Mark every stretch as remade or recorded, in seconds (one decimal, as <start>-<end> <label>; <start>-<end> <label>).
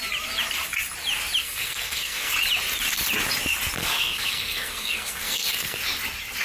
0.0-1.4 recorded; 1.4-2.3 remade; 2.3-3.8 recorded; 3.8-5.8 remade; 5.8-6.4 recorded